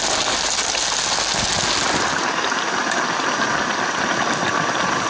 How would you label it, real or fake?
real